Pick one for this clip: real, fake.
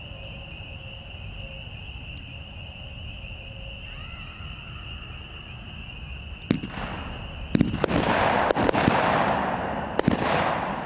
real